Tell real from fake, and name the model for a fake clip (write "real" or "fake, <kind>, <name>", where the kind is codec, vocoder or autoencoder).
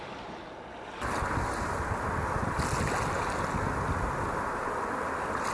real